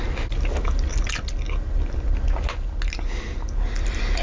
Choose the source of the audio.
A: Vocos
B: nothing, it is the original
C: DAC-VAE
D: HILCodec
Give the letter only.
B